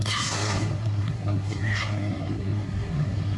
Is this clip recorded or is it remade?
remade